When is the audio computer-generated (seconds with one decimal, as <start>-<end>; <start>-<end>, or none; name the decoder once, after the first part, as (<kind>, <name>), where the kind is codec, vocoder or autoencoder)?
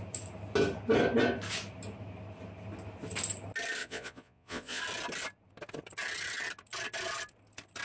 3.8-4.8 (vocoder, Vocos)